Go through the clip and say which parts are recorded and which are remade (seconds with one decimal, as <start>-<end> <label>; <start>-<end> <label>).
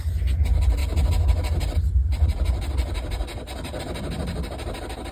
0.0-5.1 recorded